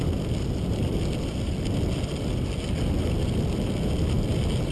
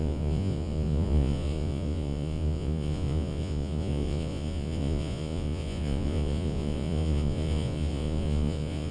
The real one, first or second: first